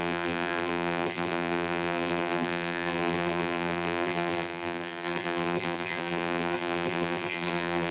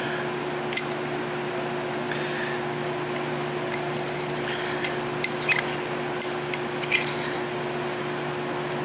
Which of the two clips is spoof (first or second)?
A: first